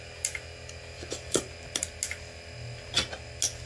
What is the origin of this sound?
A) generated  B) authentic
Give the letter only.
B